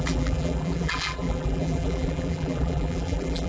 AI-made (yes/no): yes